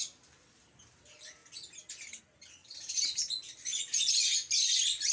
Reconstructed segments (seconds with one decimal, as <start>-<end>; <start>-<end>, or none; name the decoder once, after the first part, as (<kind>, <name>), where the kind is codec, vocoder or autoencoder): 2.6-3.3 (vocoder, BigVGAN v2)